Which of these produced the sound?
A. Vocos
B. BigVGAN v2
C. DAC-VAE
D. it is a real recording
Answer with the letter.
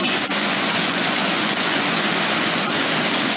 A